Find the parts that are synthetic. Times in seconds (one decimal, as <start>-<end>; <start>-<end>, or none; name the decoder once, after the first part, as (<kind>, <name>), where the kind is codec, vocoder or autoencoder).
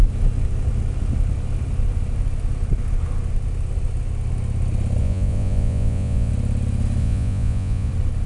5.0-6.3 (vocoder, Vocos); 7.0-7.9